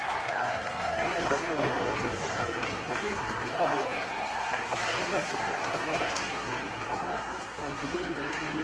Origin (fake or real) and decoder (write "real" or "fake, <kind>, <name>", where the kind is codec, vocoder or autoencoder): fake, codec, SNAC